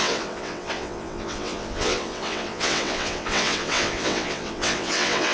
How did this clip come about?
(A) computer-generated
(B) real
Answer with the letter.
A